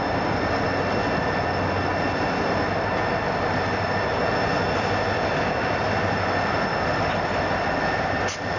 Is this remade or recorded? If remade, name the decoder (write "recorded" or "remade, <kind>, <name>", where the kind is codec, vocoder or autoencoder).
recorded